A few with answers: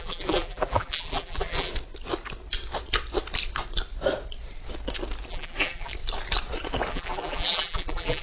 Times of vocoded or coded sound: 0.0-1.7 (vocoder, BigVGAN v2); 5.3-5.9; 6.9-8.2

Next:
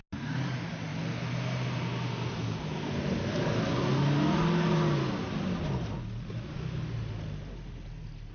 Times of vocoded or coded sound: none

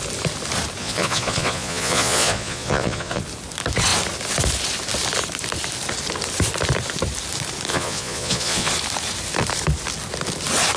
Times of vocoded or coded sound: 0.8-3.2 (vocoder, Vocos); 7.7-8.7

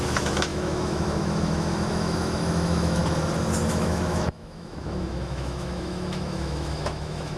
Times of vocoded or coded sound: 0.0-3.0 (autoencoder, DAC-VAE); 3.7-7.4

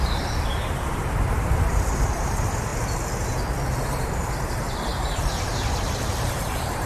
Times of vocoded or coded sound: 0.0-2.7 (vocoder, BigVGAN v2); 3.8-4.9; 6.2-6.9

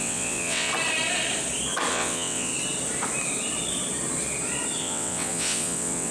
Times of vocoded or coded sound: 0.0-0.7 (vocoder, WaveNeXt); 1.9-2.5; 4.8-6.1